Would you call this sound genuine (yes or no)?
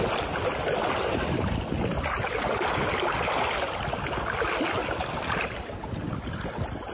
yes